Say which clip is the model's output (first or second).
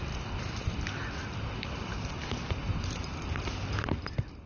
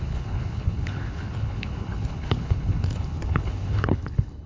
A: second